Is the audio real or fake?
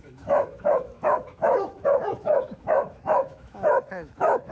fake